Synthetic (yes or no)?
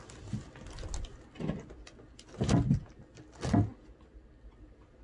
no